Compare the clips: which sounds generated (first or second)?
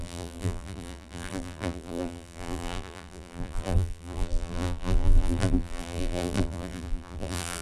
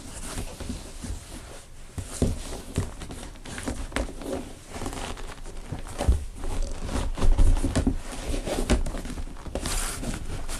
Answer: first